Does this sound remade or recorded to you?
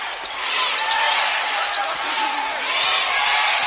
recorded